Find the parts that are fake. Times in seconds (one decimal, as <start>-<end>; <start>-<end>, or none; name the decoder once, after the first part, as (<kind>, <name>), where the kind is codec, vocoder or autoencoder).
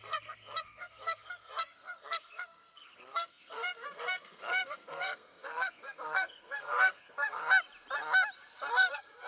0.0-7.4 (codec, SNAC); 8.7-9.3